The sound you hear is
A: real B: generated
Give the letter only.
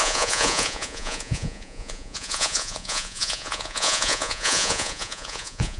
B